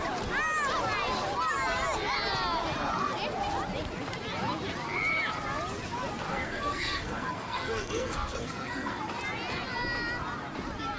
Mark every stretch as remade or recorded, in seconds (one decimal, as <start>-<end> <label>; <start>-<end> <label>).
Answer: 0.0-6.3 recorded; 6.3-9.0 remade; 9.0-11.0 recorded